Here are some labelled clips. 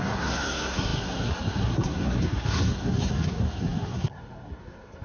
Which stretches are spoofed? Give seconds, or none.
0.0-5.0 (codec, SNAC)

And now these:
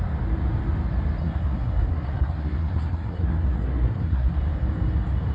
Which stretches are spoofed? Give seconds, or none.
1.2-4.4 (codec, SNAC)

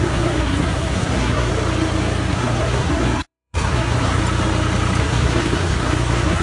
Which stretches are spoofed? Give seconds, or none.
0.0-1.5 (codec, SNAC); 2.3-4.2; 5.0-6.4

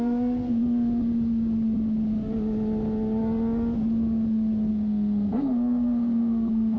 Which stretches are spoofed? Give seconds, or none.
0.0-0.6 (codec, SNAC); 4.7-6.8